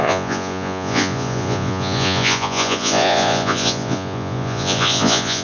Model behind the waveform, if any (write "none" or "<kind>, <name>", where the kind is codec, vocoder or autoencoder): vocoder, Vocos